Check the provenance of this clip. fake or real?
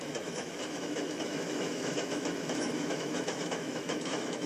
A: fake